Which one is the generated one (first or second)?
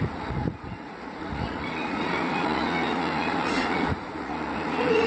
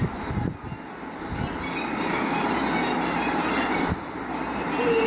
first